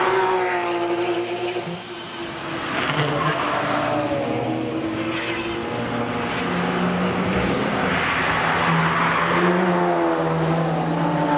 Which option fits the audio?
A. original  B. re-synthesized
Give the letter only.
A